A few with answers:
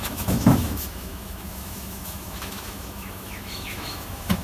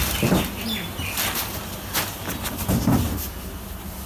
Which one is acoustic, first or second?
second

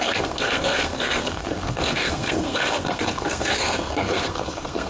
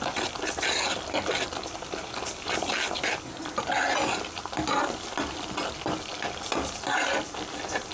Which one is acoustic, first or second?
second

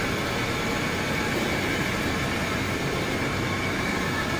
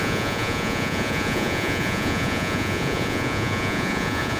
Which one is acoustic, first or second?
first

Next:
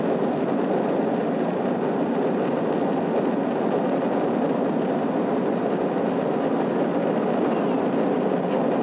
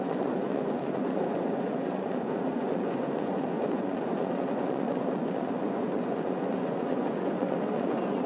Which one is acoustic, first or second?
first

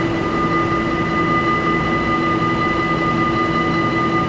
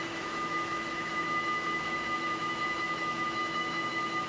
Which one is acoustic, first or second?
first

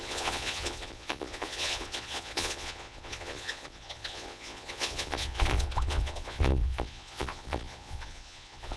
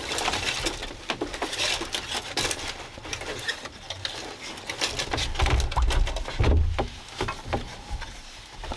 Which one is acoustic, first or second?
second